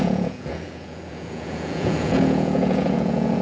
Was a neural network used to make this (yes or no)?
yes